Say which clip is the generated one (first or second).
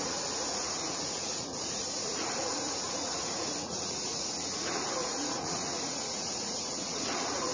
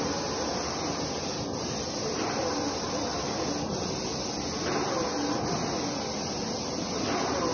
first